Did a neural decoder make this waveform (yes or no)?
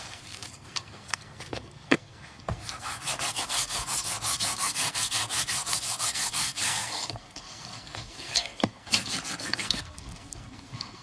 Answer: yes